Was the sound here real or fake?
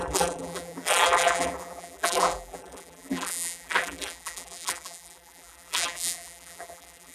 fake